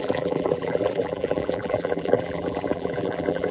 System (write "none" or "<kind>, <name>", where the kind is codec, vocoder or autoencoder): vocoder, BigVGAN v2